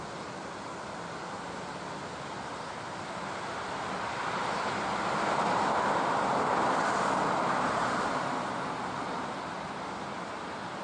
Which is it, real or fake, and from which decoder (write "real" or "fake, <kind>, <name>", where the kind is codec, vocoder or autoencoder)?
real